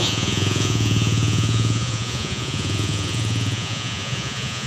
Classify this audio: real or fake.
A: fake